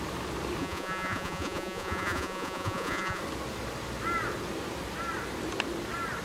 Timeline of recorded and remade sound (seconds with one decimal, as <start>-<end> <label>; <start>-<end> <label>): 0.0-0.6 recorded; 0.6-3.2 remade; 3.2-6.2 recorded